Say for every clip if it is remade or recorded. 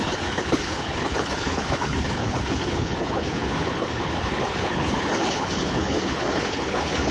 remade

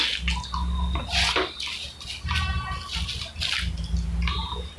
recorded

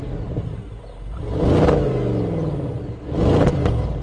recorded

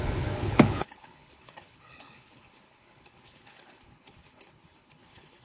remade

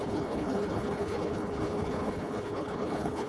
remade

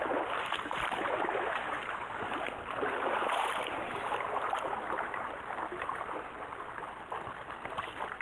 recorded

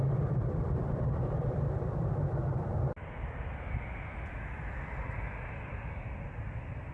recorded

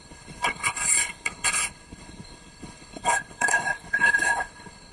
remade